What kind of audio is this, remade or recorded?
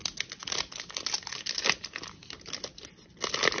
recorded